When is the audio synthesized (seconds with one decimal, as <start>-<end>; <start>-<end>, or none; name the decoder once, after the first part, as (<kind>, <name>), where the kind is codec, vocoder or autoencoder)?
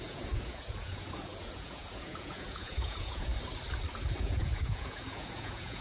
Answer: 0.0-3.3 (vocoder, Vocos); 4.2-5.8